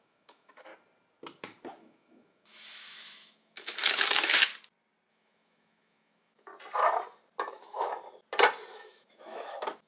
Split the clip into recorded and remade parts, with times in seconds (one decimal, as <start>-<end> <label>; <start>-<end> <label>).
0.0-0.7 remade; 0.7-1.7 recorded; 1.7-4.5 remade; 4.5-5.1 recorded; 5.1-6.5 remade; 6.5-7.5 recorded; 7.5-7.9 remade; 7.9-8.7 recorded; 8.7-9.9 remade

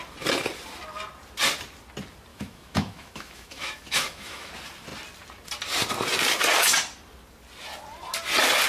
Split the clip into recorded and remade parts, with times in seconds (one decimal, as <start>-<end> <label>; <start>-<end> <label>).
0.0-2.3 recorded; 2.3-4.5 remade; 4.5-8.7 recorded

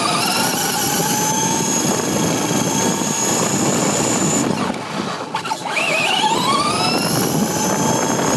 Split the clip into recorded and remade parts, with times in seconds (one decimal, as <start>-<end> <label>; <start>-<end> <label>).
0.0-1.0 recorded; 1.0-1.6 remade; 1.6-5.6 recorded; 5.6-6.2 remade; 6.2-8.4 recorded

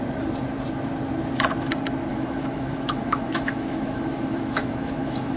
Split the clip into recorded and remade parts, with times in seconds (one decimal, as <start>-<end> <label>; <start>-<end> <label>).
0.0-2.1 recorded; 2.1-5.4 remade

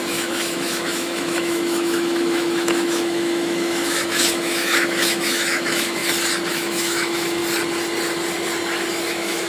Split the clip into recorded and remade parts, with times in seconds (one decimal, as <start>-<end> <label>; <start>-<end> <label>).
0.0-6.0 remade; 6.0-6.5 recorded; 6.5-7.4 remade; 7.4-9.0 recorded; 9.0-9.5 remade

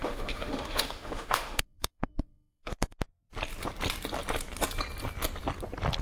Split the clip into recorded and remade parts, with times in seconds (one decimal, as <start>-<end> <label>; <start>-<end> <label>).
0.0-3.0 remade; 3.0-6.0 recorded

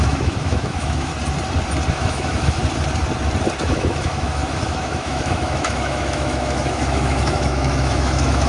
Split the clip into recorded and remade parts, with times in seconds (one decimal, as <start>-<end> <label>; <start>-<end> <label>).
0.0-1.1 remade; 1.1-1.9 recorded; 1.9-2.6 remade; 2.6-3.6 recorded; 3.6-8.5 remade

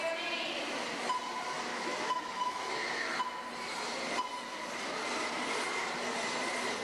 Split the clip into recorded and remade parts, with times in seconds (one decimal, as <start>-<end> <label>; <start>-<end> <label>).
0.0-1.7 recorded; 1.7-2.7 remade; 2.7-6.8 recorded